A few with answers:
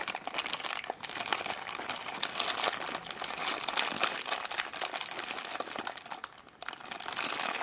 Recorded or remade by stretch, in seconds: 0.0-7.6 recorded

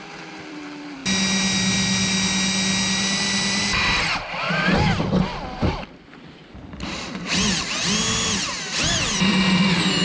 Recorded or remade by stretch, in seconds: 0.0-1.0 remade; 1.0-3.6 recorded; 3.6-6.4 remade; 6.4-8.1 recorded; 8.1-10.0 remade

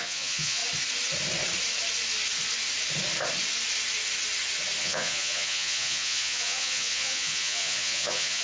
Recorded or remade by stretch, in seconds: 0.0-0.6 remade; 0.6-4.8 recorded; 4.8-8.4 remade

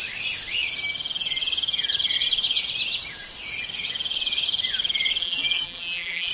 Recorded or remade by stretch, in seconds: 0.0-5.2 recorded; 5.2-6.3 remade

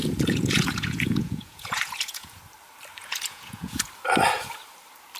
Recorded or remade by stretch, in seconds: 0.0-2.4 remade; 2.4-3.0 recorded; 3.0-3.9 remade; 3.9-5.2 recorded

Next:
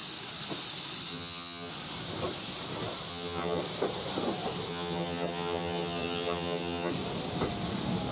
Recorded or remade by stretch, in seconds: 0.0-1.1 recorded; 1.1-1.7 remade; 1.7-3.1 recorded; 3.1-3.6 remade; 3.6-4.7 recorded; 4.7-6.9 remade; 6.9-8.1 recorded

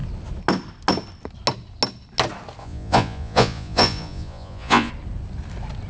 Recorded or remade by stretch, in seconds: 0.0-2.6 recorded; 2.6-4.9 remade; 4.9-5.9 recorded

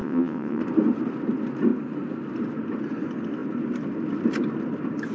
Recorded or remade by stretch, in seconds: 0.0-0.6 remade; 0.6-5.1 recorded